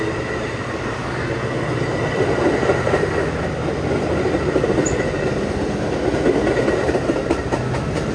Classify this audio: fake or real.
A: real